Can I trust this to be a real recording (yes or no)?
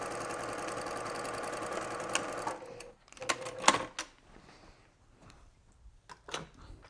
yes